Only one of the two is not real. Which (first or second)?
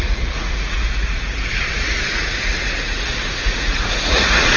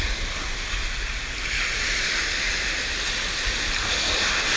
first